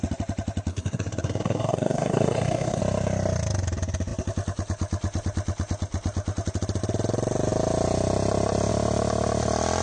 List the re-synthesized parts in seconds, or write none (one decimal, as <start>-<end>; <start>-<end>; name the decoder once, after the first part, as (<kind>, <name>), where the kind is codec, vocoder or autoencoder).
0.7-2.8 (codec, SNAC)